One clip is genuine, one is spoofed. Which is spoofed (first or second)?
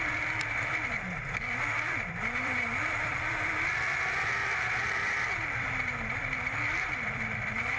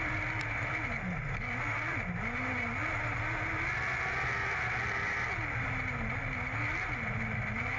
first